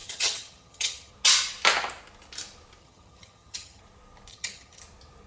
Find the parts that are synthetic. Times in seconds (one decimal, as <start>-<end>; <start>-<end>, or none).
0.0-1.1; 2.8-3.8; 4.3-4.8